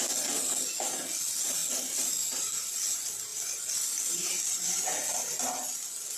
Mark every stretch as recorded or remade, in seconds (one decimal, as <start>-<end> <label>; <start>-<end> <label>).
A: 0.0-6.2 recorded